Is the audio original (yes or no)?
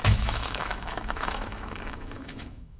no